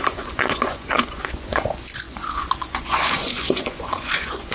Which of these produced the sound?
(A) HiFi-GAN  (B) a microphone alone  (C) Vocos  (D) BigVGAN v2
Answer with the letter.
C